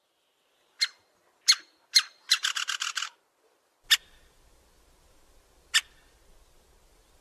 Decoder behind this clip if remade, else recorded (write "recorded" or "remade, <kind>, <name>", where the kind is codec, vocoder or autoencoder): recorded